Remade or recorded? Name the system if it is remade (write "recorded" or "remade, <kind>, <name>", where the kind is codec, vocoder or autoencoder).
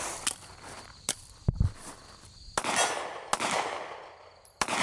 recorded